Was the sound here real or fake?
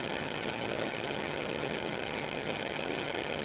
fake